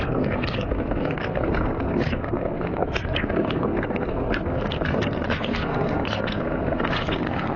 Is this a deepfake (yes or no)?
yes